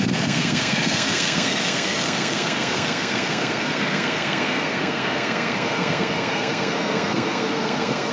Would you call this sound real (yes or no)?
no